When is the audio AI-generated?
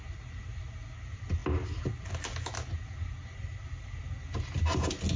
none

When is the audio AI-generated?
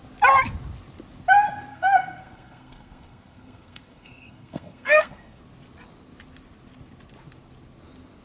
1.7-5.4 (codec, SNAC)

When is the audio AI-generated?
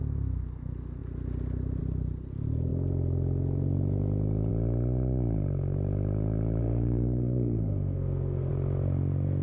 6.6-8.5 (codec, SNAC)